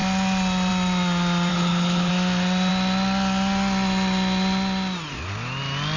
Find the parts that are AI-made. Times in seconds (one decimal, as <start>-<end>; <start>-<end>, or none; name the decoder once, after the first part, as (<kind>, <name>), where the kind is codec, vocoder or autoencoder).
1.5-2.1 (codec, HILCodec)